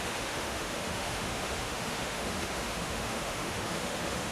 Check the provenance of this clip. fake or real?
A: fake